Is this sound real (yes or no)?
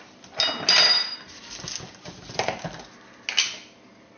yes